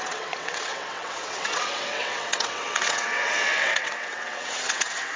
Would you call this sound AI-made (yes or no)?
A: yes